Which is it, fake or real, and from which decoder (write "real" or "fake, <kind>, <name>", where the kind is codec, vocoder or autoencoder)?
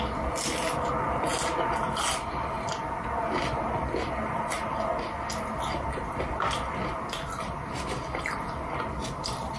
real